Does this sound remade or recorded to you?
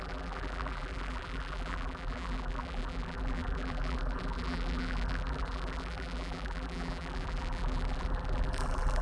remade